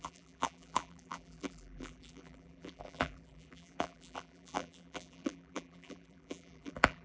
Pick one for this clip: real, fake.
fake